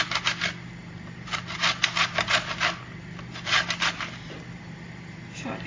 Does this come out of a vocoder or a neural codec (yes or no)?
no